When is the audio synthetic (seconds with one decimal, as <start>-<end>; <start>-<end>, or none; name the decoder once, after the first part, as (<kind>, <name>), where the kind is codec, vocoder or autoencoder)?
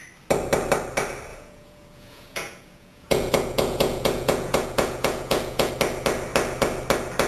1.3-5.7 (vocoder, Vocos)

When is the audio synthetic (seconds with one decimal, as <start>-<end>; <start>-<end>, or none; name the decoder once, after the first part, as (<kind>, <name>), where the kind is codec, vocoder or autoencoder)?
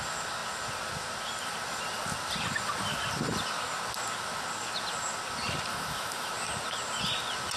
5.7-6.3 (autoencoder, DAC-VAE)